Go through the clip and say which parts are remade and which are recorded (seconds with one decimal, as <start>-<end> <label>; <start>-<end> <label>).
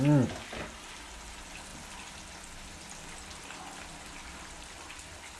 0.0-5.4 recorded